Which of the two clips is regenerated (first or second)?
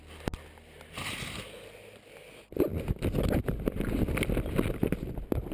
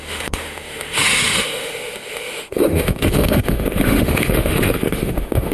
second